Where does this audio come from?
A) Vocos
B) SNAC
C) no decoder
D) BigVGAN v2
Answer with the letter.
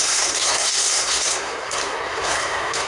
B